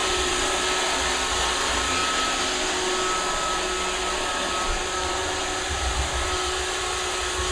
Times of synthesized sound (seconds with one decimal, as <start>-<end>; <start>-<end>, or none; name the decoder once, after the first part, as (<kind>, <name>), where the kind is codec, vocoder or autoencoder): 0.0-0.6 (vocoder, BigVGAN v2); 5.2-6.8